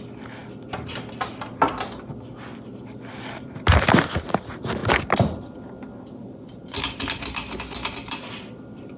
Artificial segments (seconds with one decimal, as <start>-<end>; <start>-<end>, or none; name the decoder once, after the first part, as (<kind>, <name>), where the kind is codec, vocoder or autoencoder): none